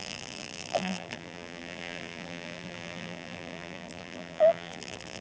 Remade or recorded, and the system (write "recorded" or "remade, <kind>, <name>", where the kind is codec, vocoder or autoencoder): remade, vocoder, BigVGAN v2